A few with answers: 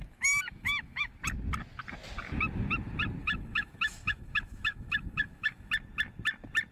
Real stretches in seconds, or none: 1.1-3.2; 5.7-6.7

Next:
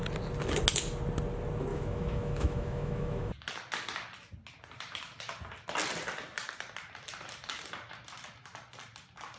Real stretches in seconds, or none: 0.0-1.7; 3.3-9.4

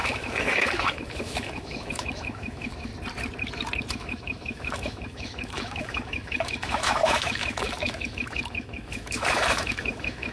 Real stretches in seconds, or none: 2.9-3.9

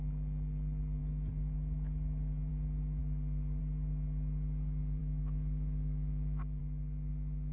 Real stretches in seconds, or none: 0.0-5.0; 6.6-7.5

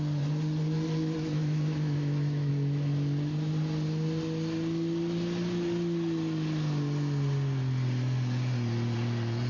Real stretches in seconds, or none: 0.0-1.3; 2.5-9.5

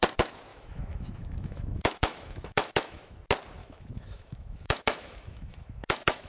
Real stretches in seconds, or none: 0.0-0.5; 3.2-3.6

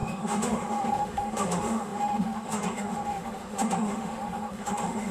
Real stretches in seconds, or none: none

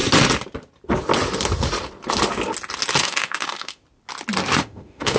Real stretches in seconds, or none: 0.0-3.0; 3.8-4.6